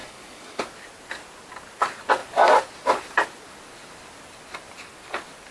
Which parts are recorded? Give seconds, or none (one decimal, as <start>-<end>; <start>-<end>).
0.6-5.5